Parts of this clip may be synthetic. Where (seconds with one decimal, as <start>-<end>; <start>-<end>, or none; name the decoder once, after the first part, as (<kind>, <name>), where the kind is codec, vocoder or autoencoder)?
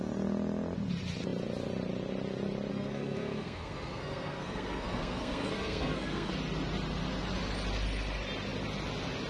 2.7-6.3 (codec, SNAC)